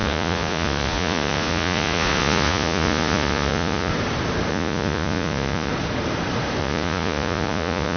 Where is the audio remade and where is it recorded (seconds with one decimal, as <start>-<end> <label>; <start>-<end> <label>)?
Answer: 0.0-3.9 remade; 3.9-4.5 recorded; 4.5-5.7 remade; 5.7-6.6 recorded; 6.6-8.0 remade